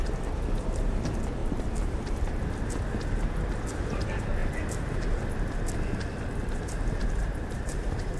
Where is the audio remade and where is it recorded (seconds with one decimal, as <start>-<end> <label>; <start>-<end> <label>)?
0.0-1.4 recorded; 1.4-2.4 remade; 2.4-4.4 recorded; 4.4-5.2 remade; 5.2-7.0 recorded; 7.0-8.2 remade